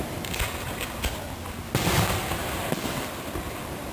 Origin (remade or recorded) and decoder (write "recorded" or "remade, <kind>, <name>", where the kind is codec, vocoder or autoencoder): recorded